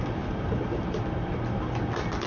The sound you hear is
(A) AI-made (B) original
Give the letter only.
B